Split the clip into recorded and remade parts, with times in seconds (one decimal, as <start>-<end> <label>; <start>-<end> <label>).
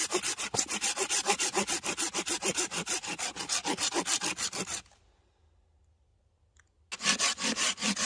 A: 0.0-8.1 recorded